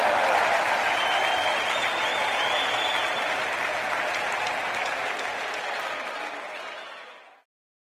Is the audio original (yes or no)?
yes